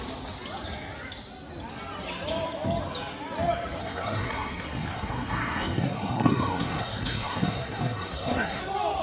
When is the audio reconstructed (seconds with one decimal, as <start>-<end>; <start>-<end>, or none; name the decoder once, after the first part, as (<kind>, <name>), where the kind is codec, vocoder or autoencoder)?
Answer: 3.8-8.6 (codec, SNAC)